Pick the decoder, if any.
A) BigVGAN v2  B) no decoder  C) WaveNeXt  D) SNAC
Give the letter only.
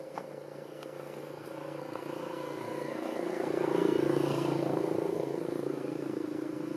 D